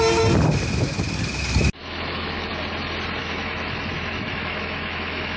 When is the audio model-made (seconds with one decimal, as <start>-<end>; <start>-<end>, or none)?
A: 1.8-2.5; 3.2-5.4